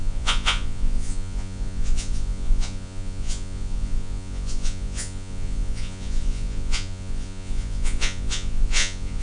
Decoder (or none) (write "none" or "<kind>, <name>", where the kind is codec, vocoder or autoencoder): vocoder, Vocos